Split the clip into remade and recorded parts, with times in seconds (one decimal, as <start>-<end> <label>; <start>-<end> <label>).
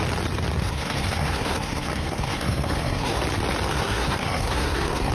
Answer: 0.0-0.6 recorded; 0.6-3.2 remade; 3.2-3.7 recorded; 3.7-5.1 remade